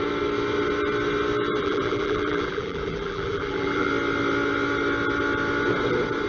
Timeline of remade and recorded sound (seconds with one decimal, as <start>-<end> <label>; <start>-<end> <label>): 0.0-1.6 recorded; 1.6-3.9 remade; 3.9-6.3 recorded